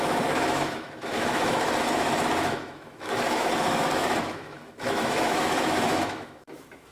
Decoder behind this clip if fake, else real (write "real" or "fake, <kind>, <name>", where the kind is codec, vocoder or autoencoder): fake, autoencoder, DAC-VAE